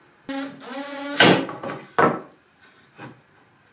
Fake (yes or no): no